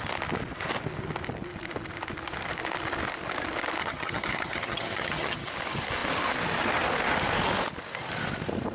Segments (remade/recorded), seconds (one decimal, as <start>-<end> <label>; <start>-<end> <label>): 0.0-3.8 recorded; 3.8-5.5 remade; 5.5-8.7 recorded